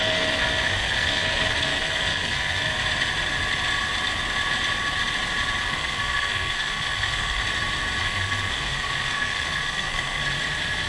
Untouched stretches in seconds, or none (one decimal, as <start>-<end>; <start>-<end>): 2.7-5.6; 7.4-8.0; 10.2-10.9